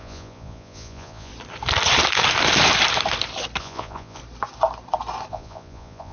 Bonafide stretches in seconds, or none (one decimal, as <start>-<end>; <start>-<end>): 1.3-3.6; 4.2-5.3